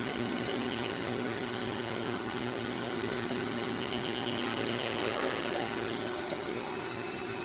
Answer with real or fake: fake